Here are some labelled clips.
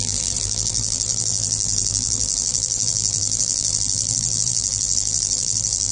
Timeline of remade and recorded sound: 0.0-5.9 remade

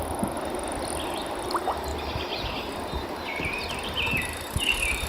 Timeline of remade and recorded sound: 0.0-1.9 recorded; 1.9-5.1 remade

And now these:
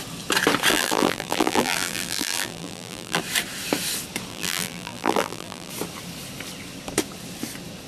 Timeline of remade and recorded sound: 0.0-0.7 recorded; 0.7-3.2 remade; 3.2-4.3 recorded; 4.3-5.7 remade; 5.7-7.9 recorded

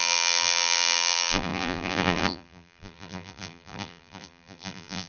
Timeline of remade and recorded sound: 0.0-5.1 remade